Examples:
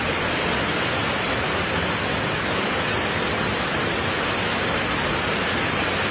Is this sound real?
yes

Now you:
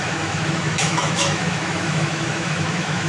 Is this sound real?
no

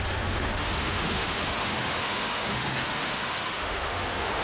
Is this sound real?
no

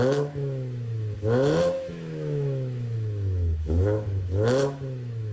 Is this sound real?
no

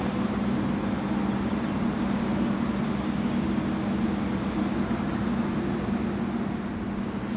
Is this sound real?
yes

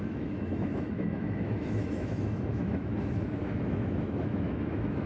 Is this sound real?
no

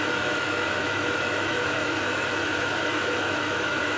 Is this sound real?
no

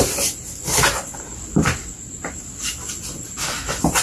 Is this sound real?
yes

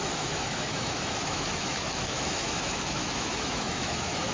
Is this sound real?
no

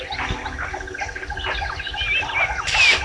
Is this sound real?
yes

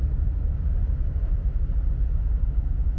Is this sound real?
yes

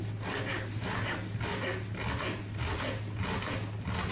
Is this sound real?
yes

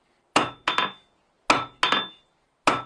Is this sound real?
yes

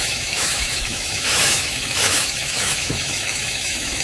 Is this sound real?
no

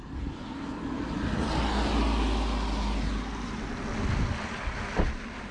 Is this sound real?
yes